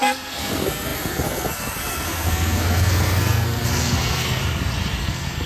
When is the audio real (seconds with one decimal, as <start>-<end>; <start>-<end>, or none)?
4.4-5.0